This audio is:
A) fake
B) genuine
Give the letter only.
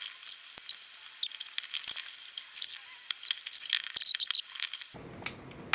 B